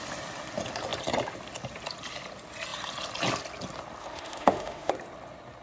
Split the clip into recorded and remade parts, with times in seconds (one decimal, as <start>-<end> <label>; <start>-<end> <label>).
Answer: 0.0-4.0 recorded; 4.0-4.9 remade; 4.9-5.6 recorded